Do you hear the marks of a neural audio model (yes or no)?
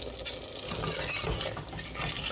no